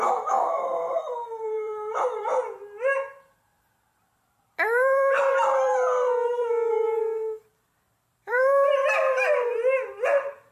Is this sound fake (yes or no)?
yes